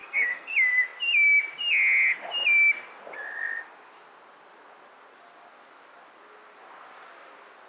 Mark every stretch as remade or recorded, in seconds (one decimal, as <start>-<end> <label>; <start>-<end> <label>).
0.0-0.5 remade; 0.5-7.7 recorded